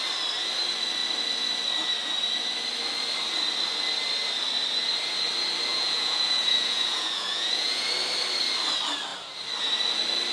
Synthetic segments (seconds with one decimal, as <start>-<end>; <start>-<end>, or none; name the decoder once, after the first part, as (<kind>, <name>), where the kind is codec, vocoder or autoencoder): 5.7-7.9 (vocoder, Vocos)